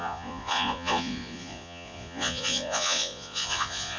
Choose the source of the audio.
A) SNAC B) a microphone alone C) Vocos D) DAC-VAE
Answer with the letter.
C